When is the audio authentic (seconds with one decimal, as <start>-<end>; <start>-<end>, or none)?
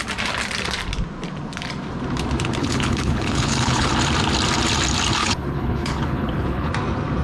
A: 0.0-2.6; 3.9-5.2; 6.7-7.2